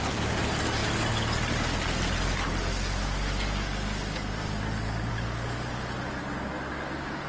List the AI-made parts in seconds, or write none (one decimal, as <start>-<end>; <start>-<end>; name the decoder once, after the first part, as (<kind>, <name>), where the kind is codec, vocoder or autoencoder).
none